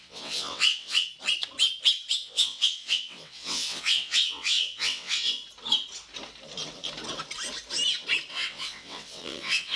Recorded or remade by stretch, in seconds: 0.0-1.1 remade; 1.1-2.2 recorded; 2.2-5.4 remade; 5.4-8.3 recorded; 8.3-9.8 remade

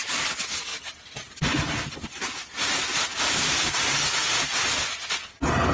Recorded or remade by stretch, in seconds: 0.0-5.7 recorded

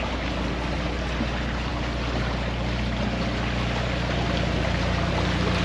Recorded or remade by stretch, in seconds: 0.0-5.6 recorded

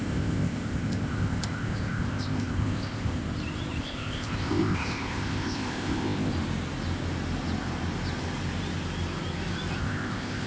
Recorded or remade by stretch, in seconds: 0.0-3.2 remade; 3.2-3.8 recorded; 3.8-6.3 remade; 6.3-9.8 recorded; 9.8-10.5 remade

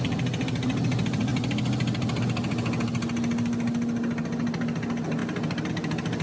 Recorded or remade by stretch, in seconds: 0.0-6.2 recorded

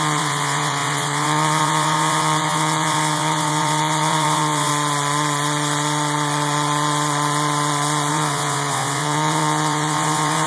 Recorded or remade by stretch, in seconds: 0.0-4.7 remade; 4.7-8.1 recorded; 8.1-10.5 remade

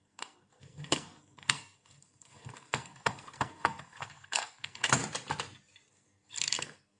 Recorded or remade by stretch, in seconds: 0.0-5.0 remade; 5.0-5.9 recorded; 5.9-7.0 remade